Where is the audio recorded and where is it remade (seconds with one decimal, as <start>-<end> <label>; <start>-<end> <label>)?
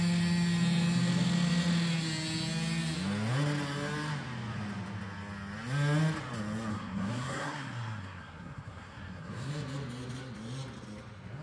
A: 0.0-6.7 recorded; 6.7-9.5 remade; 9.5-11.4 recorded